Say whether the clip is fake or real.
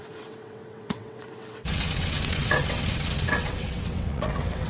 fake